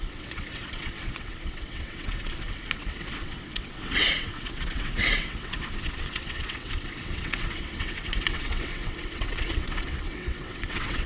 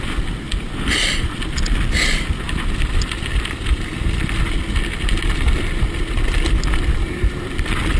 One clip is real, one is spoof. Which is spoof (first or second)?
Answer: first